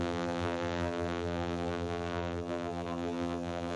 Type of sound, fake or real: fake